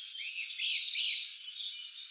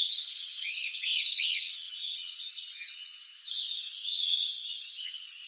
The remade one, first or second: second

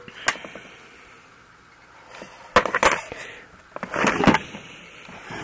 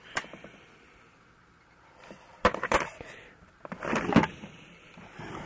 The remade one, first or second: second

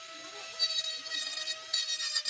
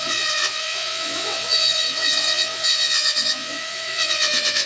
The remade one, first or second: second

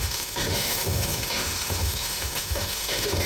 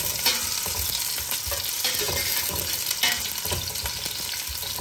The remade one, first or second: first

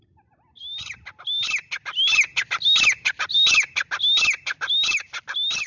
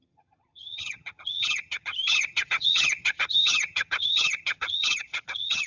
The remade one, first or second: second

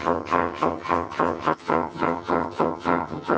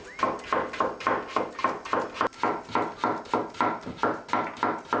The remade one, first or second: first